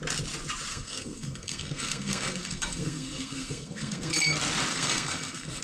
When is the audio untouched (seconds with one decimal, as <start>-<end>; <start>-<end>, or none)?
0.0-0.7; 4.1-4.7